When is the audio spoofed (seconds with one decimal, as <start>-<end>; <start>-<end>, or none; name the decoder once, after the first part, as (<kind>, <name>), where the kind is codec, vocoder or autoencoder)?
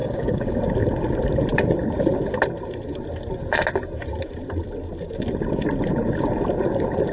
0.0-0.6 (codec, DAC)